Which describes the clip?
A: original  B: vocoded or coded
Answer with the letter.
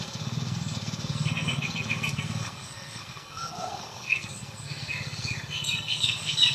B